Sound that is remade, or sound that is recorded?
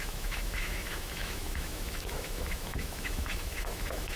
remade